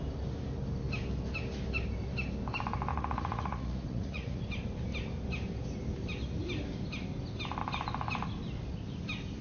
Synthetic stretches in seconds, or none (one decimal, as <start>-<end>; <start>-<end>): 2.9-4.4